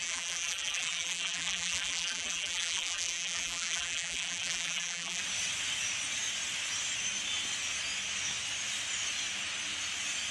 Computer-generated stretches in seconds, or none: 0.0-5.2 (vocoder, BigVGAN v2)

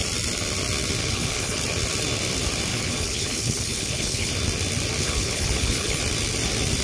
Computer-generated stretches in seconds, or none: 1.0-1.6 (codec, HILCodec); 2.7-4.3; 5.0-6.0